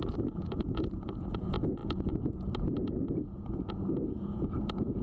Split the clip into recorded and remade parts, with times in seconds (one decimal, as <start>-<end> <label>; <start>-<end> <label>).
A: 0.0-5.0 remade